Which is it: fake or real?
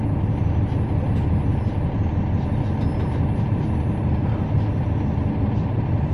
real